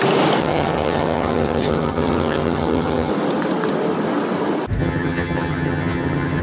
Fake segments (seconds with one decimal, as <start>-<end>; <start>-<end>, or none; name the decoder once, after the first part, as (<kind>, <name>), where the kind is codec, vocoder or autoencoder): 0.4-3.1 (vocoder, HiFi-GAN); 4.8-6.4